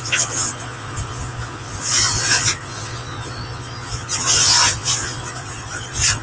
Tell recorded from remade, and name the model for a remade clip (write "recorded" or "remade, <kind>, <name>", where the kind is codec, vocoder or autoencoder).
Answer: remade, vocoder, Vocos